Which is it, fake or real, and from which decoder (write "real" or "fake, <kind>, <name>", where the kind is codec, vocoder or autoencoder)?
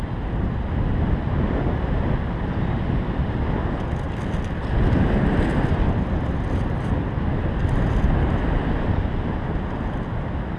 real